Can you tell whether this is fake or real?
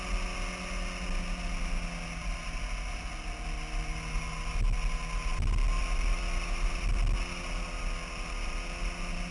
real